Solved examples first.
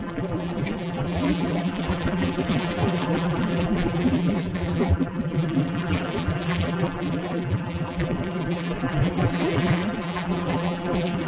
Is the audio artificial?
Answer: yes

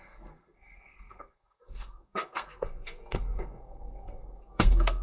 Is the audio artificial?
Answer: yes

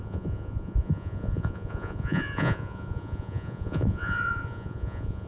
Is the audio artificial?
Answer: yes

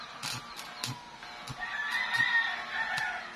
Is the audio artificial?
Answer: no